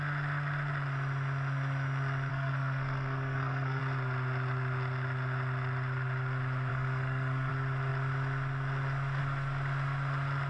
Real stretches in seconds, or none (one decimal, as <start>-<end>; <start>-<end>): 0.0-2.3; 3.8-6.7; 7.5-10.5

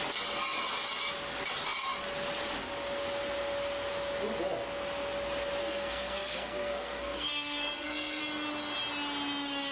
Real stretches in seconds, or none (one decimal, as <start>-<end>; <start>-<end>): 0.0-5.6; 8.2-9.7

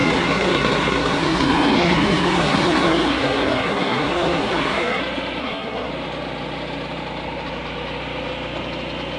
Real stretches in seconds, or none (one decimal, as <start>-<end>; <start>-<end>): 5.0-5.4; 5.9-9.2

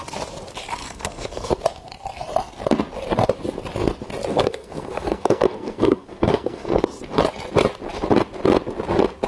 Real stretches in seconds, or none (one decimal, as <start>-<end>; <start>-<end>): 0.0-0.8; 1.5-4.3; 6.8-9.3

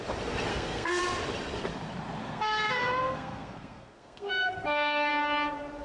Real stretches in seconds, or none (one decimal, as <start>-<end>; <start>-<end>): 0.0-0.5; 1.0-2.2; 5.1-5.8

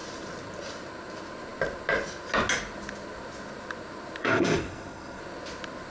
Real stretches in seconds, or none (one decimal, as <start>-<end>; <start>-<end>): 0.0-4.2; 5.2-5.9

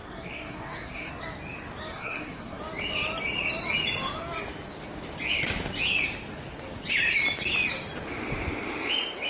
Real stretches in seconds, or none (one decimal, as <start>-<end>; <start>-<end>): 1.1-1.9; 2.6-9.3

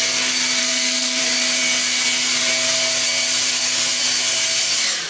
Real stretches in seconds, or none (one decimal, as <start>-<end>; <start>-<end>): 0.0-0.6; 1.2-5.1